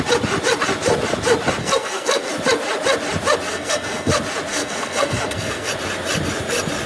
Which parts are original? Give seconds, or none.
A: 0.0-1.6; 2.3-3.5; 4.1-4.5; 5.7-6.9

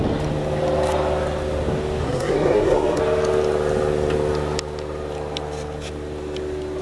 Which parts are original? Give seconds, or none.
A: 0.0-2.0; 3.0-6.8

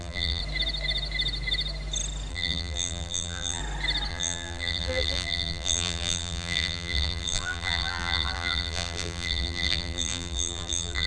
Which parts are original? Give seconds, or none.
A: 0.4-2.3; 3.6-4.1

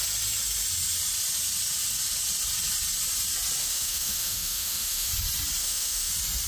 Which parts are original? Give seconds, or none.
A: 0.0-3.6; 5.1-5.6; 6.1-6.5

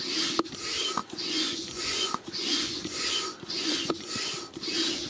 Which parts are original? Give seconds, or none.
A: 0.0-1.0; 4.1-5.1

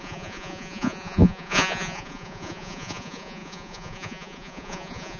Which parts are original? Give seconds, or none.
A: none